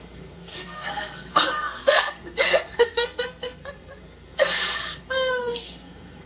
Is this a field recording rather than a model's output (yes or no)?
no